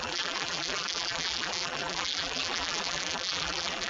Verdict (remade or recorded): remade